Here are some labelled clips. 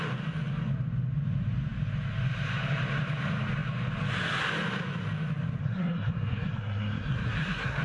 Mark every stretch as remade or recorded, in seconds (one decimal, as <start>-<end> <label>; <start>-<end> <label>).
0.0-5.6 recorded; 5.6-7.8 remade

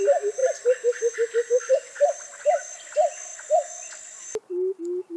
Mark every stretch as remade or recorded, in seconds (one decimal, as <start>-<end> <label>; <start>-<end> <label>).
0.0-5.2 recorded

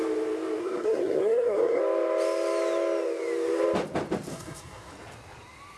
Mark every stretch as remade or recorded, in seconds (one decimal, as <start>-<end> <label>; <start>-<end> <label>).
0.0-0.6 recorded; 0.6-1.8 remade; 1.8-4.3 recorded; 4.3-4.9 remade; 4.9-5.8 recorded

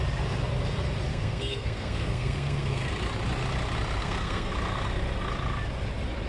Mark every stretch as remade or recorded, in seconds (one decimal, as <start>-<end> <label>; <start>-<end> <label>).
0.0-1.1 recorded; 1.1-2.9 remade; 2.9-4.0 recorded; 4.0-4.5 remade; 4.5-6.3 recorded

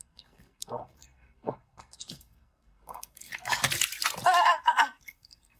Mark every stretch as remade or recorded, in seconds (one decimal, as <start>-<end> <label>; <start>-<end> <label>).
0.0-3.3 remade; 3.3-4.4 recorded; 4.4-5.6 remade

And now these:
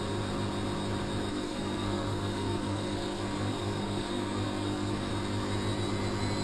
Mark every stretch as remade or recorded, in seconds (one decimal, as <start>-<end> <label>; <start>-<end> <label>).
0.0-1.3 recorded; 1.3-5.1 remade; 5.1-6.4 recorded

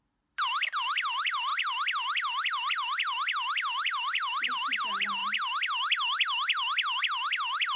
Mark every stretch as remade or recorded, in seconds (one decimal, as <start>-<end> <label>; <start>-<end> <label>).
0.0-7.8 recorded